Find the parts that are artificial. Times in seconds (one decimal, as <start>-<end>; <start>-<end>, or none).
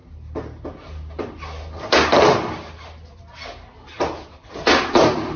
none